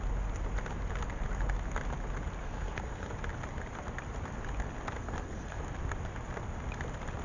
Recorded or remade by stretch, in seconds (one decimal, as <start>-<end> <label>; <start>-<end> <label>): 0.0-2.4 recorded; 2.4-3.1 remade; 3.1-5.0 recorded; 5.0-5.6 remade; 5.6-7.2 recorded